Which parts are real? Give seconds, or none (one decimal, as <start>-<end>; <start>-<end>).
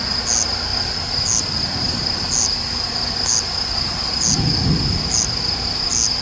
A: 0.0-6.2